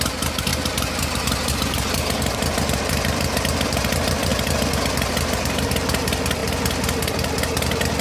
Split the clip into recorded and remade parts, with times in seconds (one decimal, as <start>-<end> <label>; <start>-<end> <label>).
0.0-8.0 recorded